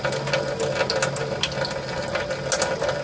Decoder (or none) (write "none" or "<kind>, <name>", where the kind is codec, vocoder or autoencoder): none